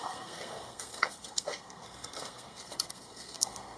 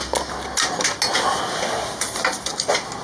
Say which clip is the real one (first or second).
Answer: second